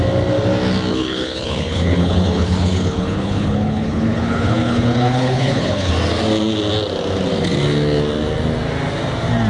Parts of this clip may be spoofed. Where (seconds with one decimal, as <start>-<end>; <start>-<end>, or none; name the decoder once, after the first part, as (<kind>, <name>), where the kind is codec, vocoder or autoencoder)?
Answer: 0.9-5.9 (codec, HILCodec)